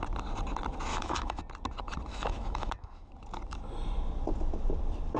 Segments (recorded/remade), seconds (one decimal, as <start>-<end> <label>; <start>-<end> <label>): 0.0-0.9 recorded; 0.9-1.4 remade; 1.4-2.1 recorded; 2.1-3.1 remade; 3.1-5.2 recorded

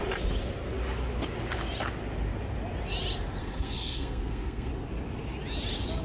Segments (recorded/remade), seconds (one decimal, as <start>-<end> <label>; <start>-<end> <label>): 0.0-3.4 recorded; 3.4-4.7 remade; 4.7-6.0 recorded

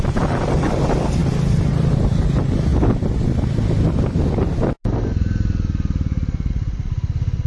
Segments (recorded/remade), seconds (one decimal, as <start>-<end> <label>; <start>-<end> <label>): 0.0-7.5 recorded

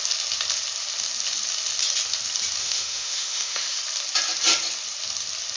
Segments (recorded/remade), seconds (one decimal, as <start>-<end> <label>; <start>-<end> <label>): 0.0-2.6 recorded; 2.6-3.8 remade; 3.8-5.6 recorded

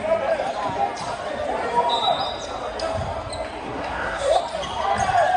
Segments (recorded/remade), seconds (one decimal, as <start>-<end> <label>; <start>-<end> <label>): 0.0-3.6 recorded; 3.6-4.4 remade; 4.4-5.4 recorded

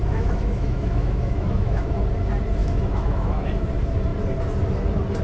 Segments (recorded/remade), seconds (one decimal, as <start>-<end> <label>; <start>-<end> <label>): 0.0-2.0 remade; 2.0-2.6 recorded; 2.6-3.5 remade; 3.5-5.2 recorded

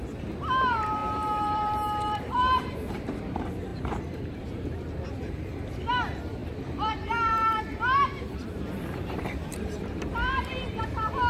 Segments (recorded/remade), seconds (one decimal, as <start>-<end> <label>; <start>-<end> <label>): 0.0-11.3 remade

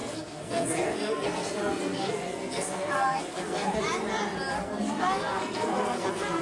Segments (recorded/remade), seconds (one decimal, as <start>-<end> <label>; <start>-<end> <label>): 0.0-3.8 remade; 3.8-4.5 recorded; 4.5-6.4 remade